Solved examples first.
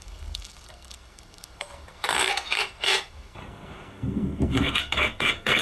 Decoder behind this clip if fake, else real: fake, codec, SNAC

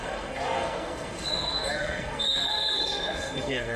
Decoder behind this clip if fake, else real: fake, codec, SNAC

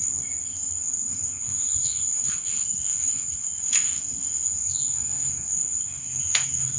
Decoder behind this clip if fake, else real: fake, codec, SNAC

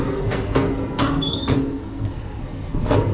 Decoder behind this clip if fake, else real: fake, codec, SNAC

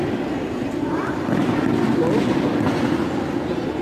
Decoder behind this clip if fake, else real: real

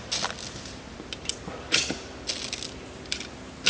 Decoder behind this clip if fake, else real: real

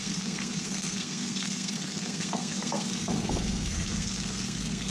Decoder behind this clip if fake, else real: fake, codec, SNAC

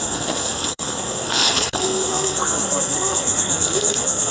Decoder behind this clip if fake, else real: fake, codec, SNAC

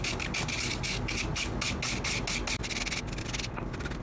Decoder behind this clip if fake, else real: real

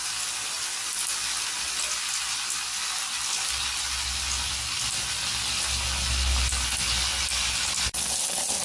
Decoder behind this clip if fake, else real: real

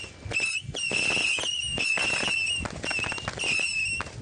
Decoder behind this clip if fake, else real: real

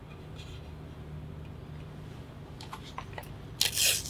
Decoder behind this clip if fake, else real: real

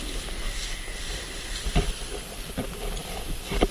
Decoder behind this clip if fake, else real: real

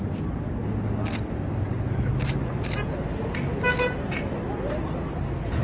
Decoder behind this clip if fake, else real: real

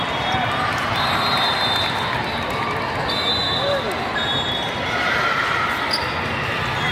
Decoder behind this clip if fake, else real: real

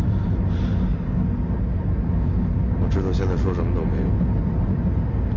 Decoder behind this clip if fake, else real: real